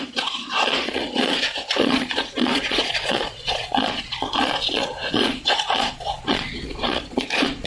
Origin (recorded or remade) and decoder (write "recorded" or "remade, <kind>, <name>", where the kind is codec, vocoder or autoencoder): remade, vocoder, Vocos